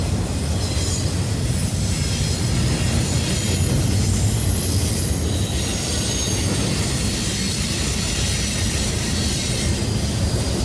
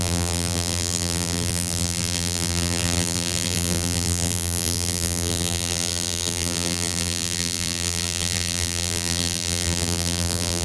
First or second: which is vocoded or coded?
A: second